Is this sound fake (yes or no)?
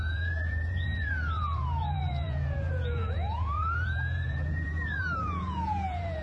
yes